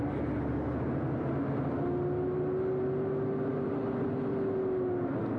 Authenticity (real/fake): real